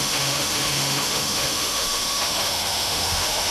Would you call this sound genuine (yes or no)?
no